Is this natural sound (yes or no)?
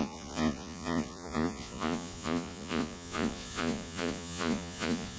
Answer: no